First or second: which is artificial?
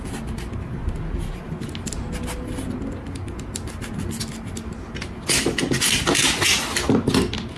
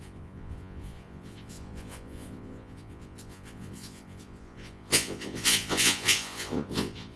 second